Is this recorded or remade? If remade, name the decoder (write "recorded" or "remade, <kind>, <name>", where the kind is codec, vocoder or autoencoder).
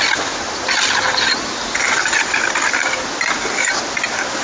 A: recorded